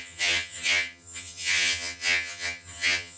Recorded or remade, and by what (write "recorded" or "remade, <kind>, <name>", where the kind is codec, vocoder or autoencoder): remade, vocoder, HiFi-GAN